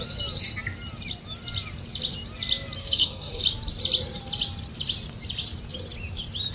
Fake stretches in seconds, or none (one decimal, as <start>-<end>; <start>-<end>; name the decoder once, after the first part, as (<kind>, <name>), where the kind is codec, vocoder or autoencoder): 2.8-3.4 (codec, SNAC)